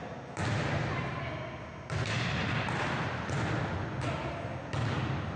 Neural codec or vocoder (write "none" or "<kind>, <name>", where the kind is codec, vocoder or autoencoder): none